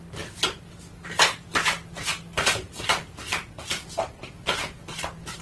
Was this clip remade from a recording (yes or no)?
no